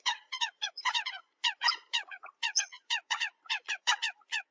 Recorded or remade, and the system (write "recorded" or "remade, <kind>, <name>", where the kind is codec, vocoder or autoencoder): remade, vocoder, Vocos